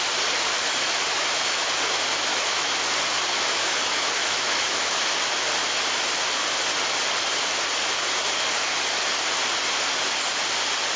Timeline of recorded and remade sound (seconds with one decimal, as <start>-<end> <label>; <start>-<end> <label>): 0.0-0.5 recorded; 0.5-1.7 remade; 1.7-2.3 recorded; 2.3-2.8 remade; 2.8-3.3 recorded; 3.3-5.3 remade; 5.3-11.0 recorded